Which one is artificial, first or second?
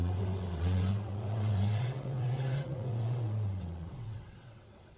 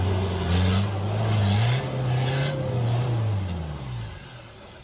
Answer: first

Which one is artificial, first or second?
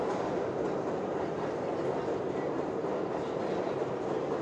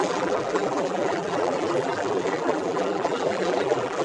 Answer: second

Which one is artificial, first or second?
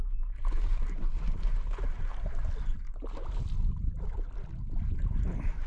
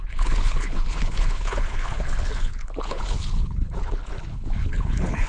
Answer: second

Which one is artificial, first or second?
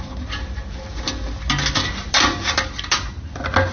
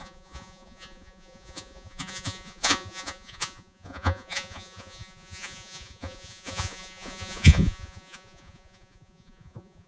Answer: second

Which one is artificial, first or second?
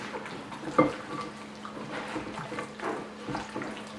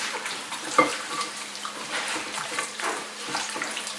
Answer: second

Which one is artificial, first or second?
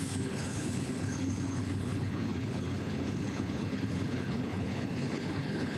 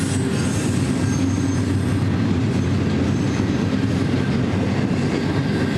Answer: first